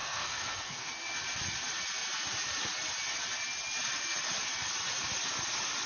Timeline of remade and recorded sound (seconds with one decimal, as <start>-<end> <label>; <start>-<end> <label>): 0.0-0.9 remade; 0.9-5.9 recorded